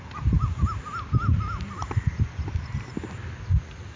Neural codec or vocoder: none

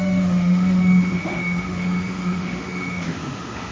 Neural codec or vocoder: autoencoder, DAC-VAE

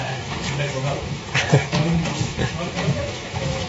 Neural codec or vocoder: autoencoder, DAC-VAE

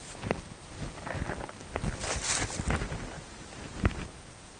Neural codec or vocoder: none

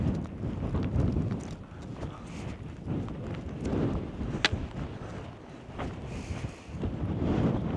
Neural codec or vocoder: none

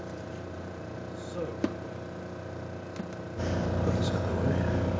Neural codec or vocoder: vocoder, BigVGAN v2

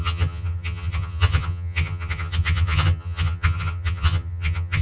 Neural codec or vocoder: vocoder, HiFi-GAN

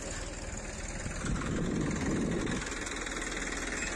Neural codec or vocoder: none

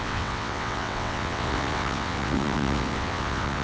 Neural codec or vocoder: vocoder, WaveNeXt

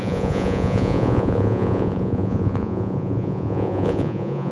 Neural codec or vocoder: vocoder, Vocos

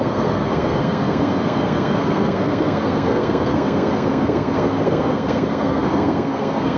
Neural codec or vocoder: codec, SNAC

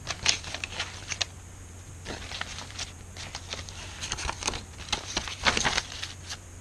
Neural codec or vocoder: none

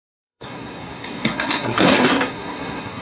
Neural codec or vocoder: codec, SNAC